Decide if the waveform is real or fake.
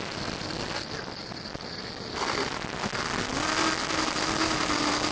real